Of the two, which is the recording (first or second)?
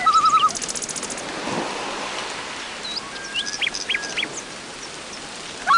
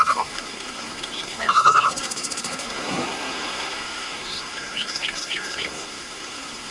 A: first